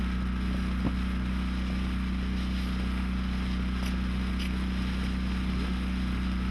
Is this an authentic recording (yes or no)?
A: yes